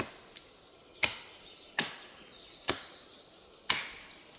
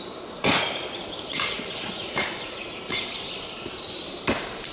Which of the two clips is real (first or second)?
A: first